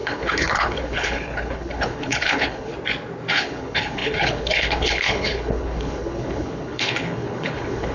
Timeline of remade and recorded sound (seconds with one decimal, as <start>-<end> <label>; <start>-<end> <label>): 0.0-2.7 remade; 2.7-3.3 recorded; 3.3-7.9 remade